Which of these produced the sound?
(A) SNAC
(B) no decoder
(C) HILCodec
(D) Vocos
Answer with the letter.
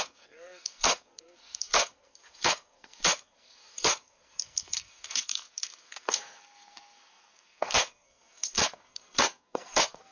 A